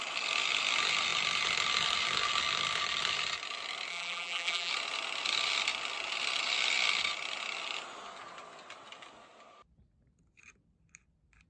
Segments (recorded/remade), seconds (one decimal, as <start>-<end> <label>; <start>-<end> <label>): 0.0-3.9 recorded; 3.9-4.7 remade; 4.7-11.5 recorded

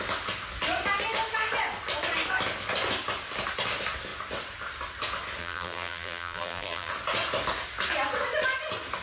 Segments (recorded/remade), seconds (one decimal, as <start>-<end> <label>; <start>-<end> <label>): 0.0-5.4 recorded; 5.4-6.9 remade; 6.9-9.0 recorded

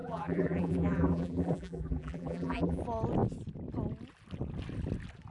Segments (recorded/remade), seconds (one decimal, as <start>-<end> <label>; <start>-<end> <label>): 0.0-2.8 remade; 2.8-5.3 recorded

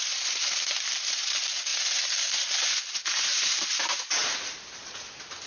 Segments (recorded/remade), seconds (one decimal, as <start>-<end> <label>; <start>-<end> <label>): 0.0-3.3 recorded; 3.3-3.8 remade; 3.8-4.2 recorded; 4.2-4.8 remade; 4.8-5.5 recorded

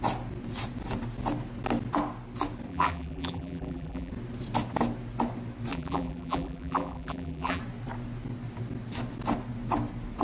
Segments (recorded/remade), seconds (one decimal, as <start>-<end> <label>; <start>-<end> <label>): 0.0-2.7 recorded; 2.7-4.1 remade; 4.1-5.7 recorded; 5.7-7.6 remade; 7.6-10.2 recorded

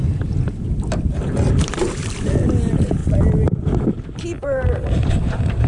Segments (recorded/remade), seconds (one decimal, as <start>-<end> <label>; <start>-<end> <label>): 0.0-5.7 recorded

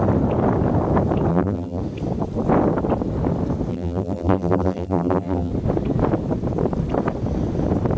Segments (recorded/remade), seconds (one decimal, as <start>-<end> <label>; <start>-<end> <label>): 0.0-1.3 recorded; 1.3-1.8 remade; 1.8-3.7 recorded; 3.7-5.5 remade; 5.5-8.0 recorded

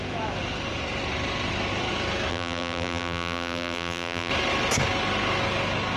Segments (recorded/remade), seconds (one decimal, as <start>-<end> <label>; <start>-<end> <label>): 0.0-2.3 recorded; 2.3-4.3 remade; 4.3-6.0 recorded